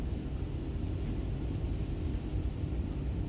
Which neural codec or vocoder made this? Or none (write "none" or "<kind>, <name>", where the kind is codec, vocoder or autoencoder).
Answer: none